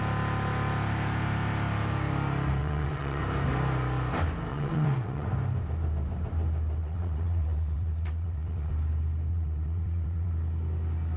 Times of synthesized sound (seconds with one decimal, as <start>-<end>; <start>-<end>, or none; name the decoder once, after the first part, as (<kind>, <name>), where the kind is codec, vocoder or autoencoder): 2.6-3.2 (vocoder, WaveNeXt); 4.5-5.3; 6.8-8.7; 9.3-10.3